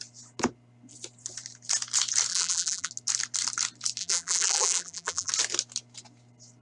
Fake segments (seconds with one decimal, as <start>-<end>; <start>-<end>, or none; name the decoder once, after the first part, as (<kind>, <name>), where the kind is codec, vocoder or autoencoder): 2.3-2.9 (vocoder, BigVGAN v2); 4.0-5.3